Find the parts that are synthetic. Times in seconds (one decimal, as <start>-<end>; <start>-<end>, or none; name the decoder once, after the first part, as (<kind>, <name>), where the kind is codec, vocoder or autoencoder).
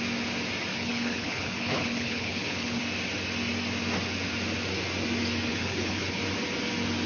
0.7-2.8 (codec, HILCodec); 5.5-6.2